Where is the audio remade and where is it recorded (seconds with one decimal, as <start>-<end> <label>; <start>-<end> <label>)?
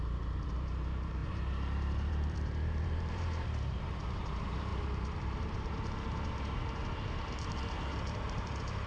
0.0-8.9 remade